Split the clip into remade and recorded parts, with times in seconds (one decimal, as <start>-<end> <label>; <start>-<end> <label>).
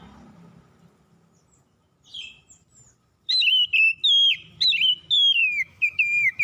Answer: 0.0-5.4 recorded; 5.4-6.4 remade